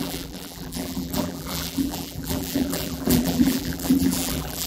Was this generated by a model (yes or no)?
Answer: yes